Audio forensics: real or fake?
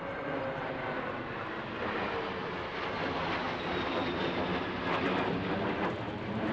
real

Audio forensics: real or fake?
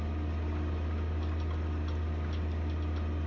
real